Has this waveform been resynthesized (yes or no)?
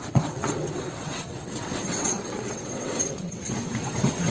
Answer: yes